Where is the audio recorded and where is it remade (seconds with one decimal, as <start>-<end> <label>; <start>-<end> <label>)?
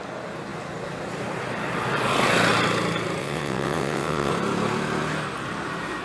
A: 0.0-3.2 recorded; 3.2-4.3 remade; 4.3-6.0 recorded